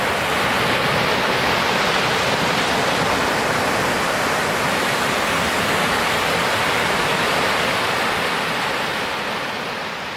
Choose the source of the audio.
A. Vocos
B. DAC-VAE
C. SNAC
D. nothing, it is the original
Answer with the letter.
D